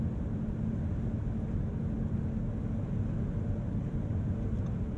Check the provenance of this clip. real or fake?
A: real